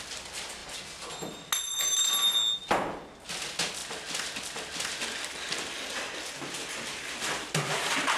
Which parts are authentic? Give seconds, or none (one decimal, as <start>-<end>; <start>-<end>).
0.0-8.2